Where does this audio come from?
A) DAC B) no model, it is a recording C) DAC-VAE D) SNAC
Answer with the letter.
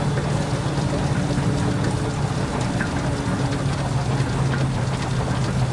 B